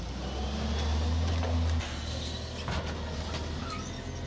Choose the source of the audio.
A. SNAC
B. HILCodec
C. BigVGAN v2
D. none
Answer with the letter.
D